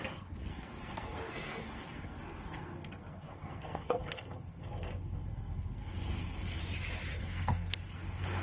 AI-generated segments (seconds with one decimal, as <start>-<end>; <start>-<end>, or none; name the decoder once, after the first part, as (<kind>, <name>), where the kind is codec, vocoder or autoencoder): 0.0-6.6 (codec, SNAC); 7.2-8.4